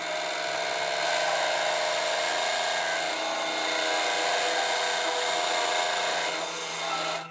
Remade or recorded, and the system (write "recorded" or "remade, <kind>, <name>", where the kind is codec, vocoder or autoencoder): recorded